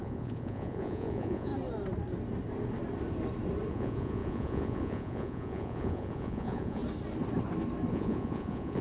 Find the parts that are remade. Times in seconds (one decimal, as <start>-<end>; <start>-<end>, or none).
0.0-1.5; 3.7-6.8; 7.9-8.8